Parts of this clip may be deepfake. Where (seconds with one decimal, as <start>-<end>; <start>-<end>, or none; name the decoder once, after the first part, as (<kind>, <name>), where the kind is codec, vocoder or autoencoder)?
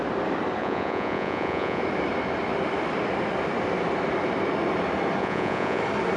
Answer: 0.6-1.8 (vocoder, Vocos); 5.2-5.8